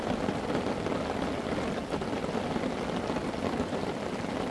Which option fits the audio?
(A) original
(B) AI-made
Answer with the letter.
A